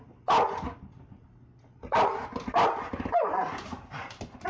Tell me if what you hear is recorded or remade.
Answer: recorded